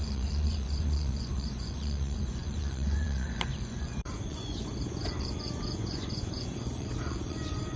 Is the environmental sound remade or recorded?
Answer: remade